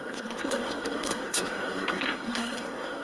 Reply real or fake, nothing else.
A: fake